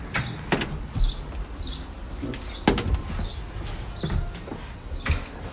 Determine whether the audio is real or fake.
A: real